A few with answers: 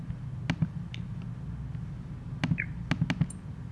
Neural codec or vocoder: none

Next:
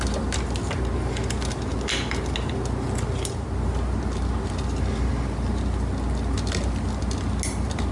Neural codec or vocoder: none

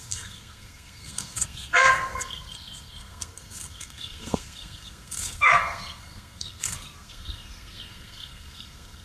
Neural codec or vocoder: codec, SNAC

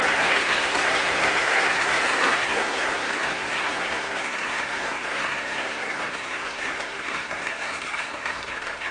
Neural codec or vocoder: codec, SNAC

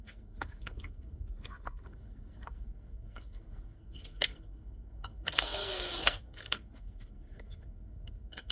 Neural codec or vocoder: codec, SNAC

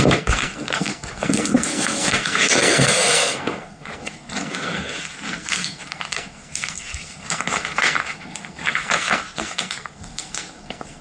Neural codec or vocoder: codec, SNAC